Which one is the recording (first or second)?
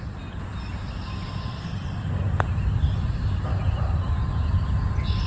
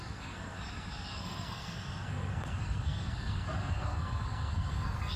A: first